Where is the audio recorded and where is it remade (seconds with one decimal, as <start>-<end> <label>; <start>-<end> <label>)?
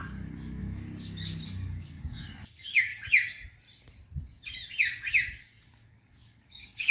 0.0-2.9 remade; 2.9-5.4 recorded; 5.4-6.9 remade